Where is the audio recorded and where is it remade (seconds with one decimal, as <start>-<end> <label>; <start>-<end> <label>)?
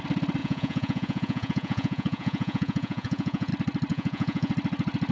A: 0.0-0.4 recorded; 0.4-3.5 remade; 3.5-3.9 recorded; 3.9-4.5 remade; 4.5-5.1 recorded